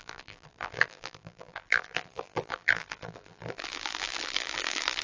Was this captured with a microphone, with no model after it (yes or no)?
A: no